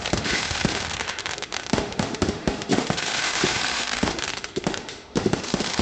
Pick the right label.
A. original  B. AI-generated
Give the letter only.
B